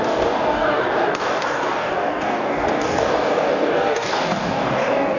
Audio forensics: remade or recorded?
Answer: remade